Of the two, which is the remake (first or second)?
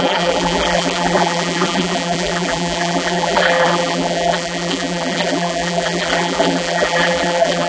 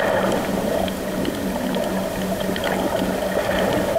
first